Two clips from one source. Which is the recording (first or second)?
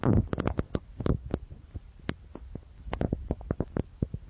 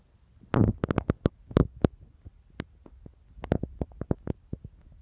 second